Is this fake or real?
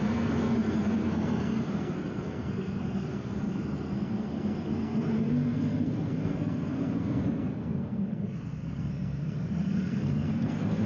fake